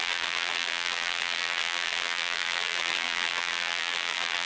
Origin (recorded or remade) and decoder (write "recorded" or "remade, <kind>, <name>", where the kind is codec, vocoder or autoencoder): remade, vocoder, BigVGAN v2